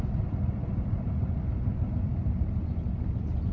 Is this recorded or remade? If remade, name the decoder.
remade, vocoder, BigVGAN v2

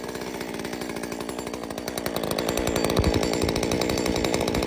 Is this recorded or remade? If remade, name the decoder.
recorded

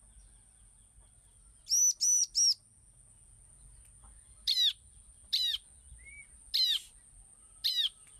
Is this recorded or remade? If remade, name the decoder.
recorded